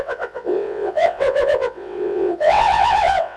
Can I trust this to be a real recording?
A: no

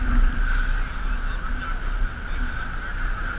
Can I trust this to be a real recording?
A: yes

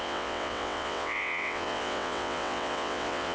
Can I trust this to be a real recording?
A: no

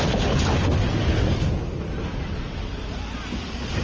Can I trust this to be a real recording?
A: yes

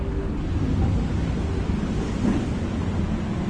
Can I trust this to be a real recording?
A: yes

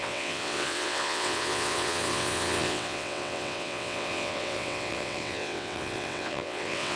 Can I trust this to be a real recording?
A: no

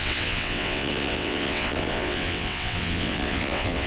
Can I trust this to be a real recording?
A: no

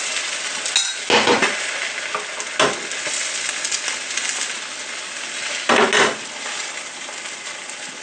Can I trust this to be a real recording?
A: yes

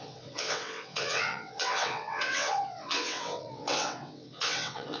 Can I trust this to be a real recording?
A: no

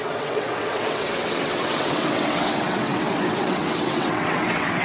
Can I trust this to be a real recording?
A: no